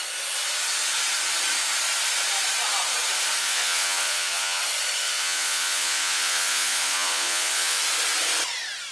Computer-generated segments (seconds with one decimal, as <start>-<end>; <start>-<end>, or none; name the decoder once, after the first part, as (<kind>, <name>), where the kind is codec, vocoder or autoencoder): 3.4-4.6 (vocoder, Vocos); 5.0-7.8